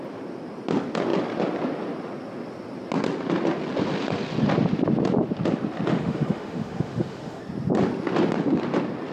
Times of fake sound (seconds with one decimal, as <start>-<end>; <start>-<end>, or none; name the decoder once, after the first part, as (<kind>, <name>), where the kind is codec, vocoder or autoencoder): 5.9-7.4 (autoencoder, DAC-VAE)